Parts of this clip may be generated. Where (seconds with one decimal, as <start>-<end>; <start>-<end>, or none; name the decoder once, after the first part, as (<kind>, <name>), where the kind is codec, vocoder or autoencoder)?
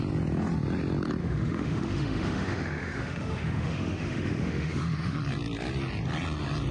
1.2-5.2 (autoencoder, DAC-VAE)